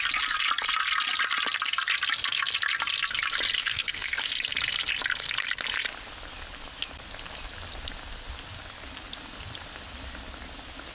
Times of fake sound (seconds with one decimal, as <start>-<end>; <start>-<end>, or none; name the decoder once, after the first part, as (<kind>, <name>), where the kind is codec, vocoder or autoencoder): 3.6-4.2 (codec, SNAC)